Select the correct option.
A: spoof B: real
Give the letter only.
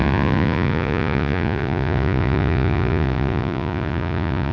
A